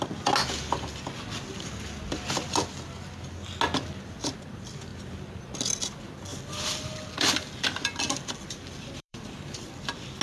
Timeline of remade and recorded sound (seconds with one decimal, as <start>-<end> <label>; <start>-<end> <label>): 0.0-6.3 recorded; 6.3-9.7 remade; 9.7-10.2 recorded